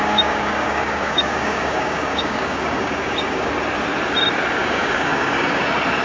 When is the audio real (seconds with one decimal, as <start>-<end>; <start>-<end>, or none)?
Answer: 3.5-4.6; 5.6-6.0